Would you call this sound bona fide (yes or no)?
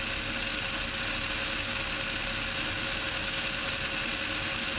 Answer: yes